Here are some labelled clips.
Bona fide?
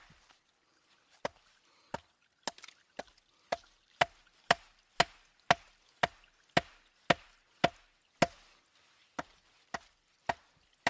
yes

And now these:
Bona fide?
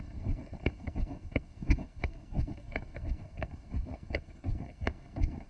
no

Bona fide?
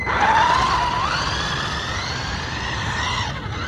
yes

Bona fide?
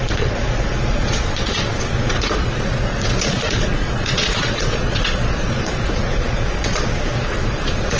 no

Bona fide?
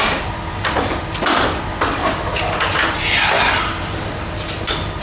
yes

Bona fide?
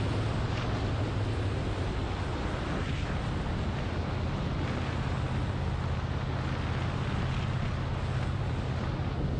yes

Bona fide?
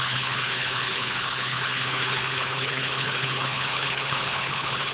no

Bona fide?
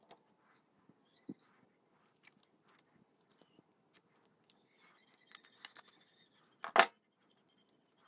yes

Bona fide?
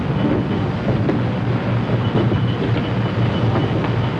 yes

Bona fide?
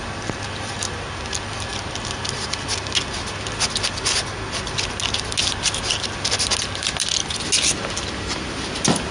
yes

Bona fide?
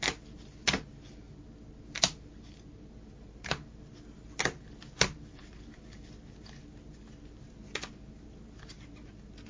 yes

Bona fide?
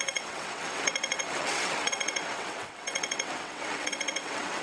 no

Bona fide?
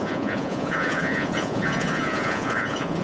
no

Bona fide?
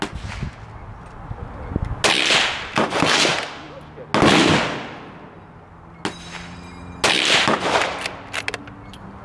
yes